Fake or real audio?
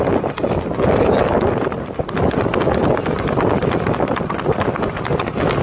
real